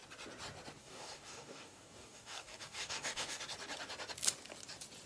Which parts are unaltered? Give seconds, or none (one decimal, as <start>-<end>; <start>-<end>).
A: 0.0-0.8; 3.4-5.1